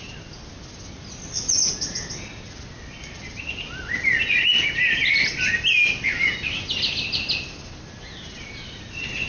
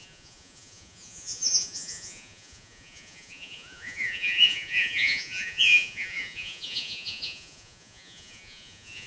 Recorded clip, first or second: first